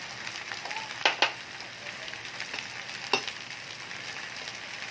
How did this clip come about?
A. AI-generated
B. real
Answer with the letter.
B